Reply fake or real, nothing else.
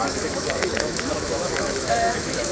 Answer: fake